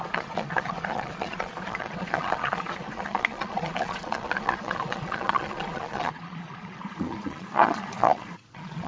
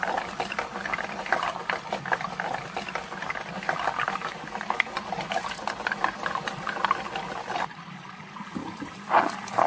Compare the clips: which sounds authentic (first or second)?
second